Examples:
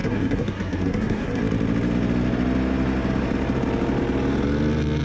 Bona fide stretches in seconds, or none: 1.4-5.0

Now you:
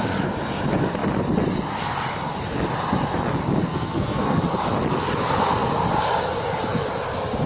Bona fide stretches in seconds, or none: 0.0-3.6; 4.4-7.5

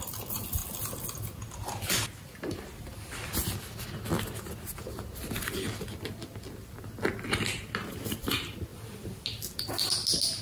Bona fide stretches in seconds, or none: 0.0-10.4